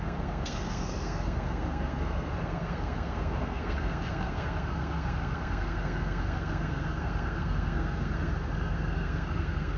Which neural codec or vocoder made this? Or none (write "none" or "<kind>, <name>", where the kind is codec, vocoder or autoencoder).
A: codec, SNAC